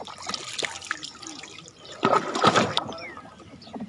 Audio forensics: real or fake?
real